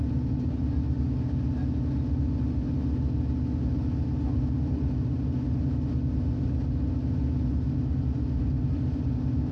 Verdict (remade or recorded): recorded